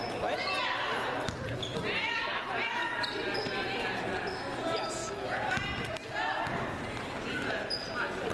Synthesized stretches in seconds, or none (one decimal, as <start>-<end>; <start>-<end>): none